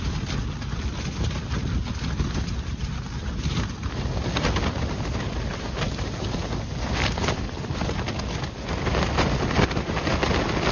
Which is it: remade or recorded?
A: recorded